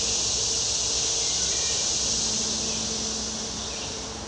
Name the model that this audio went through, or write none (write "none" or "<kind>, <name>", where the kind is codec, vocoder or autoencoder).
none